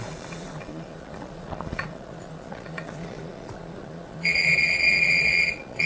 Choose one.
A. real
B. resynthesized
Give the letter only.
B